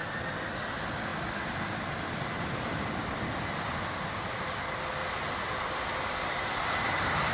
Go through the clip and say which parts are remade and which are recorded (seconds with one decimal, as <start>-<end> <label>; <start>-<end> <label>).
0.0-7.3 recorded